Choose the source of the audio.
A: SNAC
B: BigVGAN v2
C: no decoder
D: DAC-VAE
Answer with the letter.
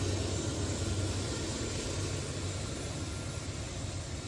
C